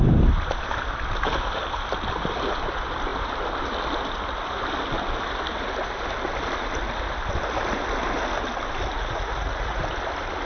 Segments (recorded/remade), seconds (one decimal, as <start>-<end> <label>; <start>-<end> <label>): 0.0-8.9 recorded; 8.9-9.8 remade; 9.8-10.4 recorded